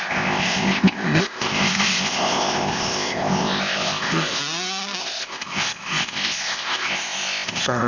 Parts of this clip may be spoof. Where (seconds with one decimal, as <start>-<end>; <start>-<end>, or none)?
0.0-4.4; 5.0-7.9